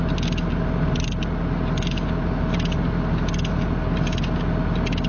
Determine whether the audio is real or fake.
real